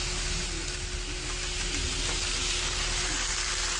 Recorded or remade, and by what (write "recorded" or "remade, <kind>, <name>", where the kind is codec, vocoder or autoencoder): recorded